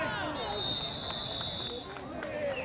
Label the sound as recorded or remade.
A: recorded